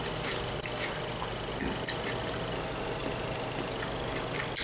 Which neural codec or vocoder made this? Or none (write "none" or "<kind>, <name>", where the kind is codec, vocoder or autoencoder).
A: none